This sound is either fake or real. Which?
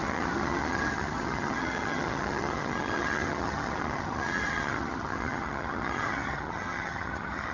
fake